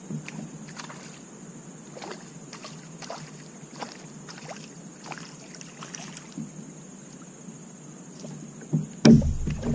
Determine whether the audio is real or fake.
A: real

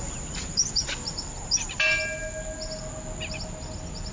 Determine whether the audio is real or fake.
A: real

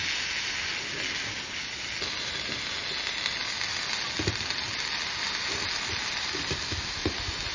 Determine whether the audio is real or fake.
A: real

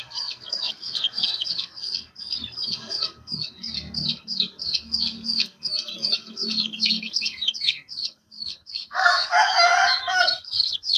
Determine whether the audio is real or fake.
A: fake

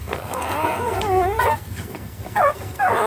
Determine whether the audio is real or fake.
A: fake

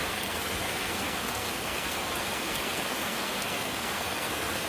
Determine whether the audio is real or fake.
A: fake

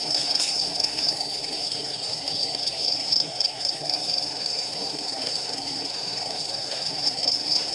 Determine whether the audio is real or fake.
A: fake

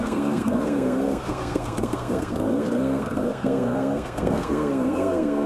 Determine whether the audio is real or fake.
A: fake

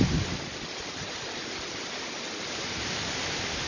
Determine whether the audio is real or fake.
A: real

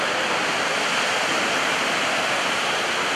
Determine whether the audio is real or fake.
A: real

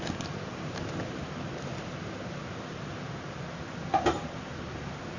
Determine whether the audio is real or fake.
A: real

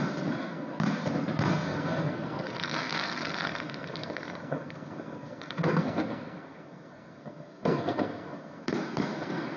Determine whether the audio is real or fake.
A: fake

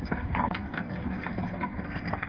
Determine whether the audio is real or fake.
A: fake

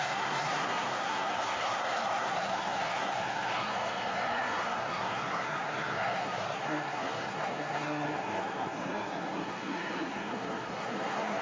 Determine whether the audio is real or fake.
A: fake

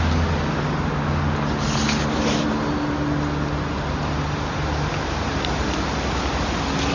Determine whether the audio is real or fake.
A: real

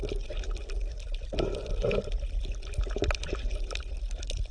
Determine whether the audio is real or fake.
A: real